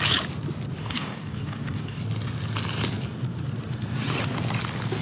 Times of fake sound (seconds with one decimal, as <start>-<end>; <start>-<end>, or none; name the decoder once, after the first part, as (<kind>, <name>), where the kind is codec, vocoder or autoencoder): 0.8-2.0 (codec, DAC)